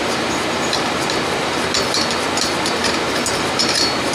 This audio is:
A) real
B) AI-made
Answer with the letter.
A